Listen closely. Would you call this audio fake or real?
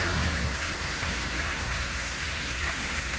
fake